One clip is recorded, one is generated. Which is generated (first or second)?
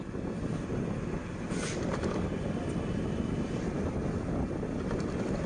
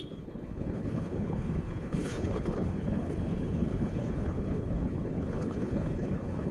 second